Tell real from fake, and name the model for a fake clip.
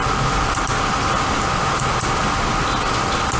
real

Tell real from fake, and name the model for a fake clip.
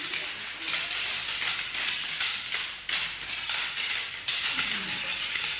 real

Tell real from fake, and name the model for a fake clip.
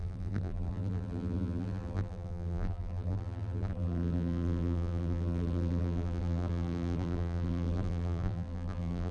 fake, vocoder, BigVGAN v2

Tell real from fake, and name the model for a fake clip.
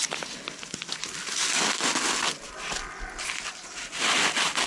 real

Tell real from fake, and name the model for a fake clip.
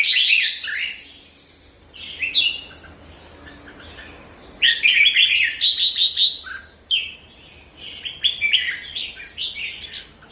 real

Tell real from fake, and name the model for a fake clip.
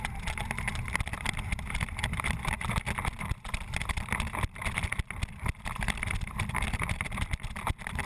real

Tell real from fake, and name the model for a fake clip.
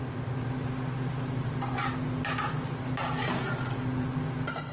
real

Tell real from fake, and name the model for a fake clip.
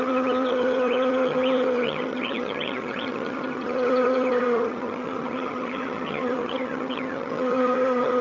fake, vocoder, HiFi-GAN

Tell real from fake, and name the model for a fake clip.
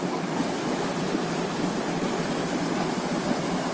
real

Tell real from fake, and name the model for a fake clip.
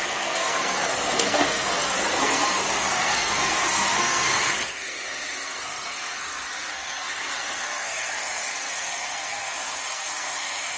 fake, codec, SNAC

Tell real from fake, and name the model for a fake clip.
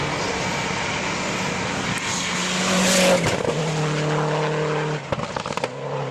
real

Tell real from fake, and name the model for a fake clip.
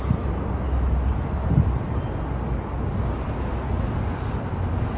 real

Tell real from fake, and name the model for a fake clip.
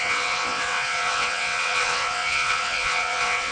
fake, vocoder, WaveNeXt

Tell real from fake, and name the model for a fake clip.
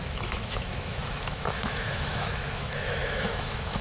fake, autoencoder, DAC-VAE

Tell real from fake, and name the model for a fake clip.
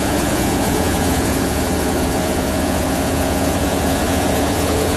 fake, vocoder, Vocos